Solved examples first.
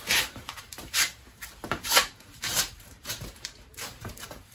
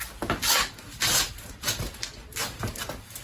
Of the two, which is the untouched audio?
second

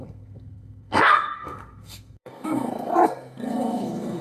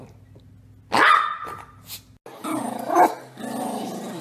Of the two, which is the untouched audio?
second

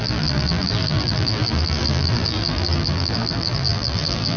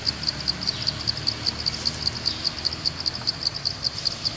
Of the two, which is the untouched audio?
second